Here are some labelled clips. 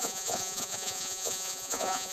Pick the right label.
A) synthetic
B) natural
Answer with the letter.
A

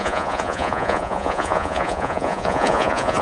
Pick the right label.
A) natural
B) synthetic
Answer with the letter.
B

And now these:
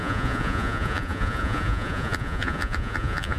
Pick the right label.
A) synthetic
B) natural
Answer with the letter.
A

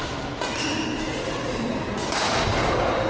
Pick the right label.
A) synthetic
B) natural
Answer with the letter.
B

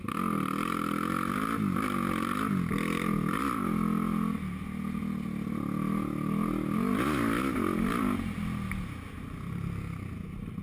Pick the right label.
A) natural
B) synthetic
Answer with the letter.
A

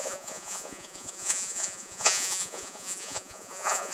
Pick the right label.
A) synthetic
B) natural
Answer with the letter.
A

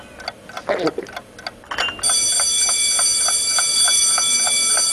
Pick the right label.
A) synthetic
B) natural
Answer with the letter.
B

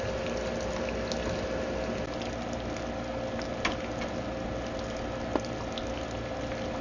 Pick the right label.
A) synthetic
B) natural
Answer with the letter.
B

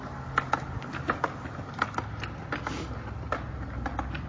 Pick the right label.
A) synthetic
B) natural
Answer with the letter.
B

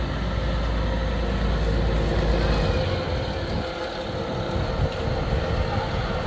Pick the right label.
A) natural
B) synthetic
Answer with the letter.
A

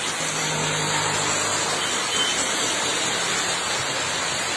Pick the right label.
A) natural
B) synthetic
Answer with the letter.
A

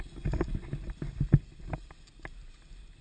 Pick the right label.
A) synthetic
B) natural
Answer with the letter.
B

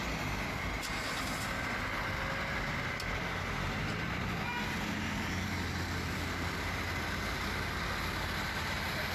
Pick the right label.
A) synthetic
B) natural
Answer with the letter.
B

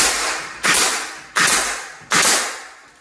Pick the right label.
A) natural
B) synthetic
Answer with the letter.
A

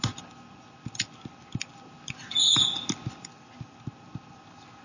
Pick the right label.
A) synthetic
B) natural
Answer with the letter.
B